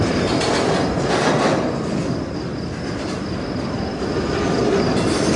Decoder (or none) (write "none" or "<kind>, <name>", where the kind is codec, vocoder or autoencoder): none